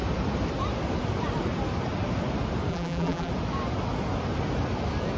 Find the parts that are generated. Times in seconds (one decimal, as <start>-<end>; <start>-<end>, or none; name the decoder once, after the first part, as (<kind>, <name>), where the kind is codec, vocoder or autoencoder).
2.7-3.3 (vocoder, BigVGAN v2)